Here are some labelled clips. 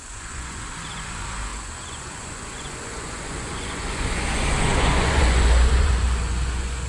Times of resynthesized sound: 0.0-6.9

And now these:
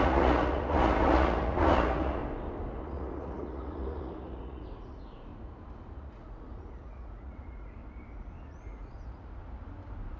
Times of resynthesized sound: 0.0-2.2; 2.8-5.3; 6.0-7.8; 8.5-9.4

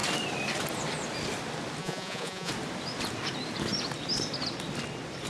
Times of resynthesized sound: 1.8-2.5

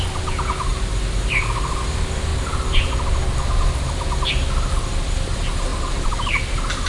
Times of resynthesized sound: none

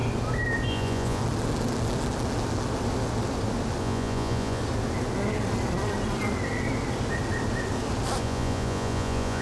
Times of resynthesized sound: 0.7-1.2; 3.8-4.6; 8.2-9.4

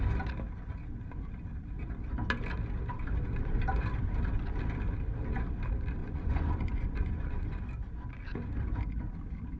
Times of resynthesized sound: 6.0-7.6

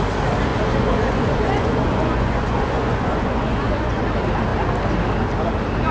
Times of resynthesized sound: 0.5-4.0

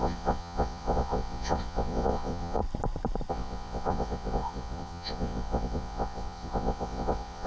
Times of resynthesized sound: 0.0-2.6; 3.3-7.5